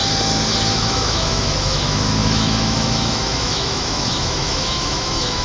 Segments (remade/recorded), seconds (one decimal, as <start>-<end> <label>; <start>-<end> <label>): 0.0-0.7 recorded; 0.7-5.4 remade